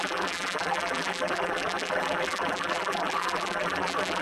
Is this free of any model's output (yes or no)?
no